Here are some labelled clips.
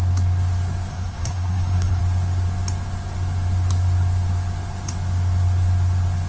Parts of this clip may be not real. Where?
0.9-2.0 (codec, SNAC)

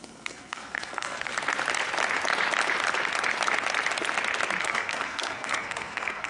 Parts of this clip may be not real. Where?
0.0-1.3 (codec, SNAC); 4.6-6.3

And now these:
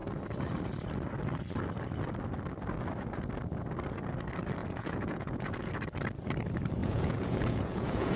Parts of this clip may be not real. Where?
4.6-5.7 (vocoder, Vocos); 6.8-8.2